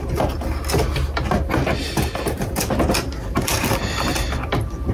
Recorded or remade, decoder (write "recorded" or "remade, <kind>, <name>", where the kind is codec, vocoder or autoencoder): recorded